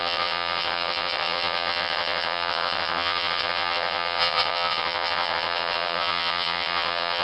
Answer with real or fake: fake